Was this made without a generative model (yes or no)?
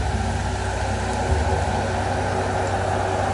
yes